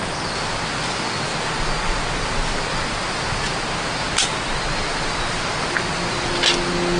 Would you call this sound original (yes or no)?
yes